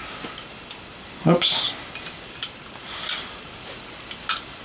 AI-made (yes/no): no